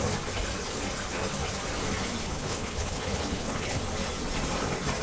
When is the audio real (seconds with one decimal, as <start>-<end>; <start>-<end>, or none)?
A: 0.0-2.2; 3.8-5.0